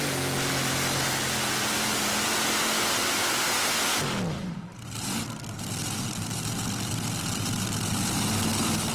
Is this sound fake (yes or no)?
no